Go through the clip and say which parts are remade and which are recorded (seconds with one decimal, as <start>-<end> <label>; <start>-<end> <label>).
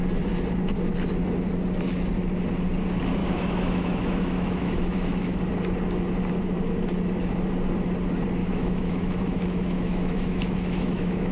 0.0-3.2 recorded; 3.2-5.4 remade; 5.4-8.4 recorded; 8.4-11.3 remade